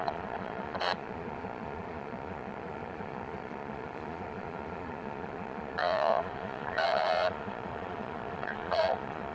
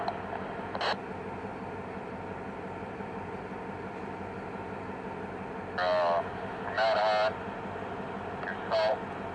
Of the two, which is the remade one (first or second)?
first